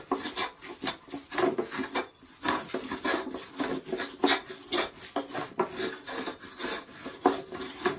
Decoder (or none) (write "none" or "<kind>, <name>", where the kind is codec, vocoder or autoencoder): none